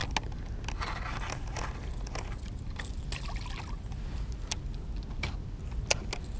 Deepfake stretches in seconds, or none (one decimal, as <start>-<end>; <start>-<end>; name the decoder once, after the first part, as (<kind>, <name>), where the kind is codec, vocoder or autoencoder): none

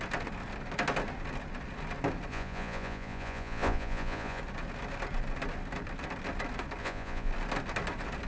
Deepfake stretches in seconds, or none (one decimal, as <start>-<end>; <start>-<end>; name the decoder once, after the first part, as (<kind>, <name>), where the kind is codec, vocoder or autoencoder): 2.3-4.4 (vocoder, Vocos); 6.8-7.3